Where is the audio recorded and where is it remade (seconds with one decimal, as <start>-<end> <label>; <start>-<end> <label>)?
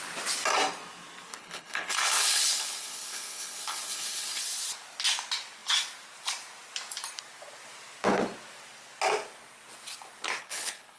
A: 0.0-1.3 recorded; 1.3-4.4 remade; 4.4-10.4 recorded; 10.4-11.0 remade